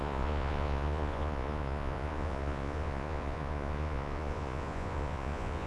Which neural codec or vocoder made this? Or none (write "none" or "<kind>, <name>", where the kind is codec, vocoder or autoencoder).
vocoder, Vocos